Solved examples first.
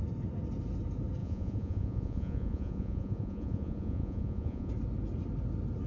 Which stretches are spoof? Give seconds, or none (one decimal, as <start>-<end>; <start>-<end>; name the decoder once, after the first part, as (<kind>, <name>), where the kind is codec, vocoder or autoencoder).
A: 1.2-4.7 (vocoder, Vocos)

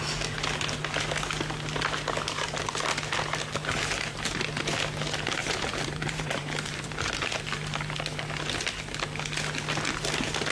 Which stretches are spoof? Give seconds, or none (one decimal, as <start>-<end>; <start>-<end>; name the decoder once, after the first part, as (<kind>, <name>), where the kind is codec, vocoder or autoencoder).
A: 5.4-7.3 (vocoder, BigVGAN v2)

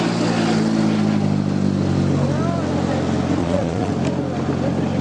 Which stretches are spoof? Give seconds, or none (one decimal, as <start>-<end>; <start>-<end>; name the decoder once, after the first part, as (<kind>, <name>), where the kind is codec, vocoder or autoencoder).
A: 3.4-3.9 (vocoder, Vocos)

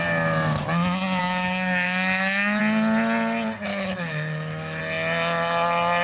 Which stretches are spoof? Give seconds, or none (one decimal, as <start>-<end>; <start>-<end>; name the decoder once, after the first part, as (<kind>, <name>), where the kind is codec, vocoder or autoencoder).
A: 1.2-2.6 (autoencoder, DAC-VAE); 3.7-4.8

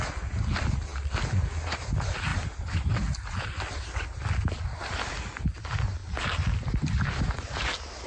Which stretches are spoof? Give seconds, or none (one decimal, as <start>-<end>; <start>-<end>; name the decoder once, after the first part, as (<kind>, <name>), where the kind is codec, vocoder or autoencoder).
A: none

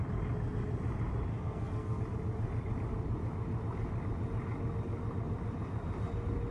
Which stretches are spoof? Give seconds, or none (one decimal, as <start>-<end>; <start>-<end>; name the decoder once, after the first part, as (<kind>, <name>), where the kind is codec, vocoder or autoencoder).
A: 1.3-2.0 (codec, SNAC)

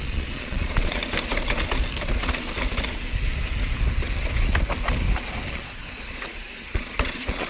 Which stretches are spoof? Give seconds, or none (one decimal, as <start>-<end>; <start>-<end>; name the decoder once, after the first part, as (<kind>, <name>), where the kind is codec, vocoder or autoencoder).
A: 0.0-1.0 (vocoder, Vocos); 5.5-7.5